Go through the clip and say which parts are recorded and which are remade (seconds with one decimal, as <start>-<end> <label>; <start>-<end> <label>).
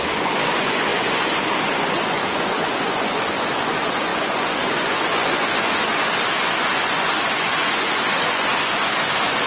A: 0.0-9.5 remade